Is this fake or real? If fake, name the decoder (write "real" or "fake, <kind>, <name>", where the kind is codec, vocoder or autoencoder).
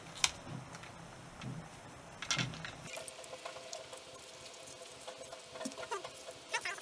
real